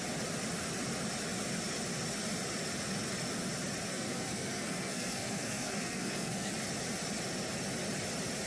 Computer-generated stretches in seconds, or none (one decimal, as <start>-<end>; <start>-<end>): 3.9-6.5